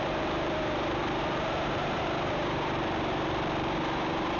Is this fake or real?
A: fake